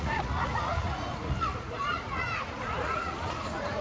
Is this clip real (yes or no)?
no